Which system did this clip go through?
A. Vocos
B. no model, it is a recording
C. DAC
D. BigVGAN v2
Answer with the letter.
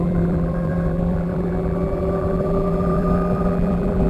D